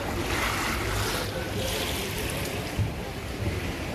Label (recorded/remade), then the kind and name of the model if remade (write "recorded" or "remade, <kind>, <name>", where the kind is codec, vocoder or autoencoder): recorded